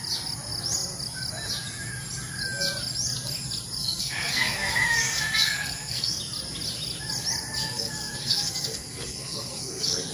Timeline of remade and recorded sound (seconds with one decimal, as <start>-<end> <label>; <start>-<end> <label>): 0.0-3.8 recorded; 3.8-6.2 remade; 6.2-7.6 recorded; 7.6-10.1 remade